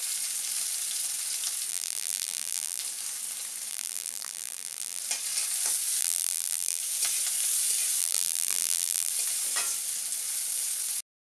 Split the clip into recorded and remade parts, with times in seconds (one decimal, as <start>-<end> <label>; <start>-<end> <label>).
0.0-1.7 recorded; 1.7-2.8 remade; 2.8-3.7 recorded; 3.7-5.0 remade; 5.0-6.0 recorded; 6.0-6.8 remade; 6.8-8.0 recorded; 8.0-9.1 remade; 9.1-11.4 recorded